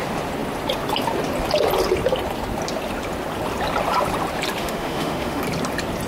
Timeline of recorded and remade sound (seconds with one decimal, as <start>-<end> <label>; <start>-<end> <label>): 0.0-4.6 recorded; 4.6-5.4 remade; 5.4-6.1 recorded